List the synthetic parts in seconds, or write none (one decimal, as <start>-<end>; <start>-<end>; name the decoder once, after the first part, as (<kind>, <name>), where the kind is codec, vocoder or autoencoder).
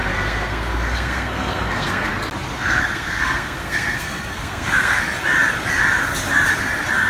0.0-2.1 (codec, SNAC); 2.5-5.0